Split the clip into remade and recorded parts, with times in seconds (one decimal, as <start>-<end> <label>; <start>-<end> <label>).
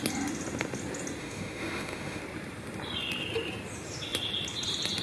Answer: 0.0-1.2 recorded; 1.2-2.2 remade; 2.2-5.0 recorded